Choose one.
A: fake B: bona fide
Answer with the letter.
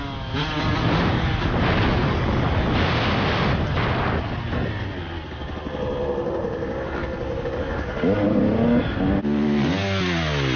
B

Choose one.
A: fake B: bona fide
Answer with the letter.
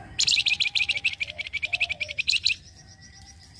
B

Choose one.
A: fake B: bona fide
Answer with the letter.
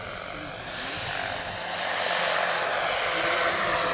B